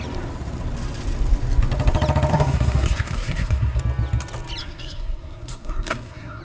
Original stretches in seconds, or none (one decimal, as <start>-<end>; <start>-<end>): 0.0-2.3; 3.8-4.6